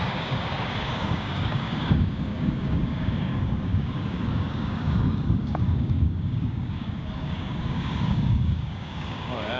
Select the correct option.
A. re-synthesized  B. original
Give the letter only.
A